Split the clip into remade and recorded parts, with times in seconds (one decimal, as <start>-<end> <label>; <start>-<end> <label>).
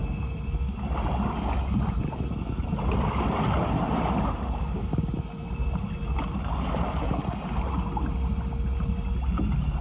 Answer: 0.0-9.8 recorded